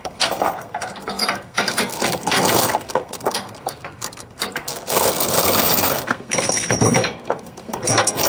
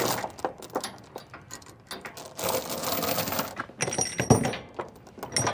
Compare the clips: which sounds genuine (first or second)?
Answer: second